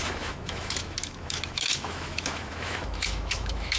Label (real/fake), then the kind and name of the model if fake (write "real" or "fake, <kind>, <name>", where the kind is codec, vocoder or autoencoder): fake, autoencoder, DAC-VAE